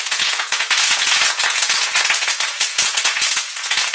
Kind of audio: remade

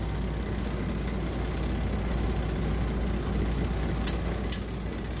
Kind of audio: recorded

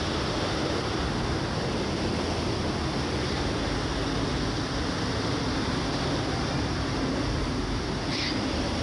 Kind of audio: recorded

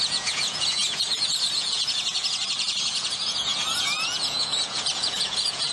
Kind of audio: remade